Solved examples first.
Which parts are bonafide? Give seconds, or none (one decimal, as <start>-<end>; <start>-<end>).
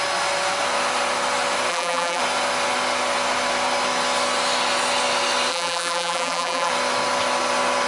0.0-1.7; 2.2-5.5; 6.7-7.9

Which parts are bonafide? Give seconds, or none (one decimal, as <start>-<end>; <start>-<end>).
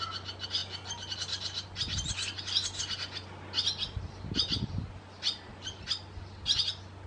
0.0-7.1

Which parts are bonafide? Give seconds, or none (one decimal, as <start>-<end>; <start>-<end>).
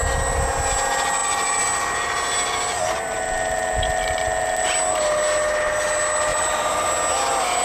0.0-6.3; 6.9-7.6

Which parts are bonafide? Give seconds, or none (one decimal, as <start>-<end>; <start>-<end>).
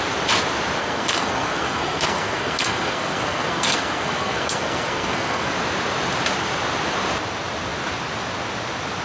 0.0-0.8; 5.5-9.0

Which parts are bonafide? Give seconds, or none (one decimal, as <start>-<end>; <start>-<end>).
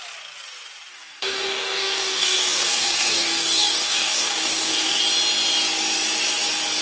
0.0-0.9; 5.0-6.8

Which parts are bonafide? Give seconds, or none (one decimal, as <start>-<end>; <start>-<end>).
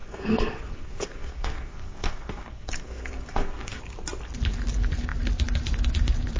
3.8-6.4